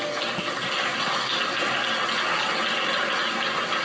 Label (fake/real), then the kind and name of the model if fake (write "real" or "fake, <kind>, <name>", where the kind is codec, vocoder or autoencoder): real